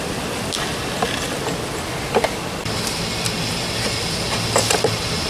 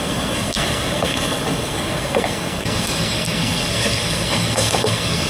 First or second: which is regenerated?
second